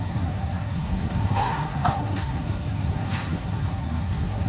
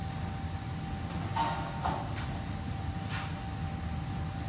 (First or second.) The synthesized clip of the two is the first